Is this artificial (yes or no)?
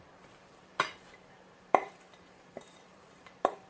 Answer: yes